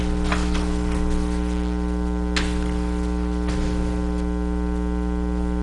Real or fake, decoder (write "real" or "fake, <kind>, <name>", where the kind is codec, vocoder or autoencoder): real